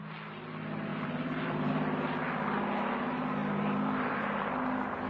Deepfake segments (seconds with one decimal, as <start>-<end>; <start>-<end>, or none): 0.9-1.7; 3.4-4.5